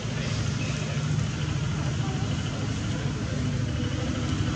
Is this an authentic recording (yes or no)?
yes